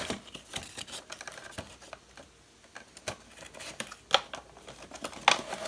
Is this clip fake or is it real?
real